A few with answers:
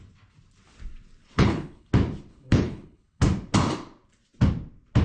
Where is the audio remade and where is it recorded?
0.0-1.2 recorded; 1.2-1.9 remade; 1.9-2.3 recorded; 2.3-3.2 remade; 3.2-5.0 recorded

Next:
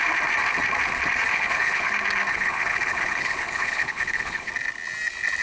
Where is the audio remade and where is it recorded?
0.0-1.3 recorded; 1.3-1.9 remade; 1.9-2.3 recorded; 2.3-4.5 remade; 4.5-5.4 recorded

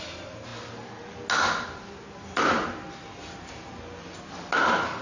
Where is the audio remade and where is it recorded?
0.0-5.0 recorded

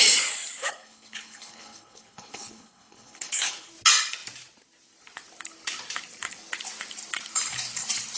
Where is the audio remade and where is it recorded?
0.0-0.6 recorded; 0.6-3.7 remade; 3.7-8.2 recorded

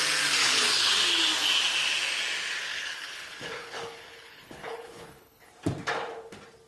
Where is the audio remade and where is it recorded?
0.0-0.4 recorded; 0.4-0.9 remade; 0.9-2.7 recorded; 2.7-5.5 remade; 5.5-6.7 recorded

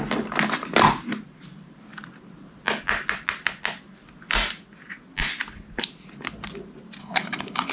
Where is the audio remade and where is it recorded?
0.0-7.0 recorded; 7.0-7.7 remade

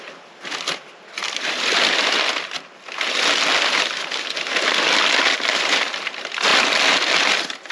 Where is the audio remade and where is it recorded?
0.0-7.7 recorded